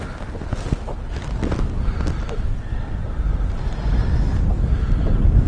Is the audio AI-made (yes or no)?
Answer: no